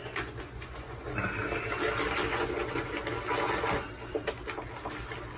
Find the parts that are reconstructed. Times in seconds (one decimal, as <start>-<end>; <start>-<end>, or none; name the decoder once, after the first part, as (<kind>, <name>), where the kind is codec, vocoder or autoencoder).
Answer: 0.0-1.2 (vocoder, Vocos); 2.3-2.9